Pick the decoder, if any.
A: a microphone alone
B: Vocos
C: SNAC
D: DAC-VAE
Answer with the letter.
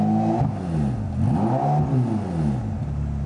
A